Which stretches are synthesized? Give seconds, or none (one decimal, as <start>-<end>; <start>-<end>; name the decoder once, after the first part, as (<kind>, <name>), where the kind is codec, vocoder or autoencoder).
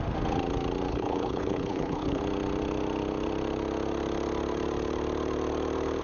0.9-2.2 (codec, HILCodec)